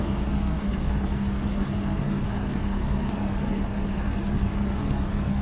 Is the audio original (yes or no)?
no